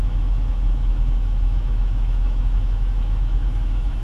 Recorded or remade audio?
remade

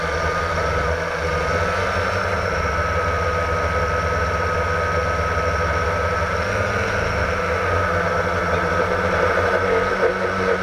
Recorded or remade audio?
recorded